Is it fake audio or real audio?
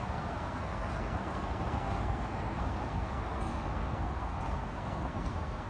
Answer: fake